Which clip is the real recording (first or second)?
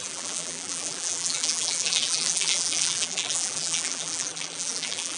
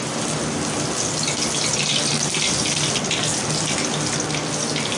second